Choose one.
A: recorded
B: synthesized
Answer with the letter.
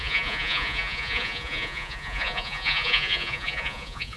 B